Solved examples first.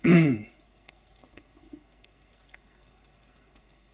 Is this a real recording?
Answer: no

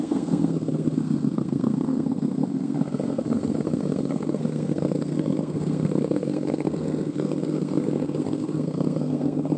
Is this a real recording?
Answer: no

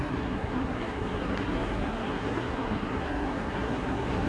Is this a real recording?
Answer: no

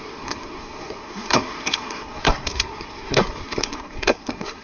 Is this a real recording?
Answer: no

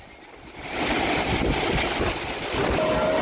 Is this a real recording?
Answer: yes